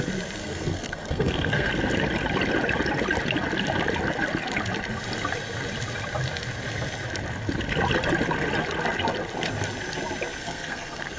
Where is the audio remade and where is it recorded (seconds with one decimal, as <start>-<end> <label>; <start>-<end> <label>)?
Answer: 0.0-0.4 recorded; 0.4-1.7 remade; 1.7-10.4 recorded; 10.4-11.2 remade